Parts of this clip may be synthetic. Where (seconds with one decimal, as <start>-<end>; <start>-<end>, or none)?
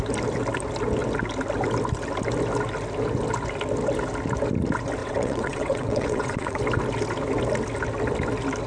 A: 5.0-6.6